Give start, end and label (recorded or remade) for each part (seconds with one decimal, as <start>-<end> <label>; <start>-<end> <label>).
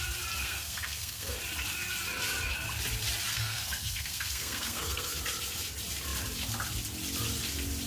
0.0-0.4 recorded; 0.4-1.4 remade; 1.4-3.3 recorded; 3.3-5.2 remade; 5.2-7.9 recorded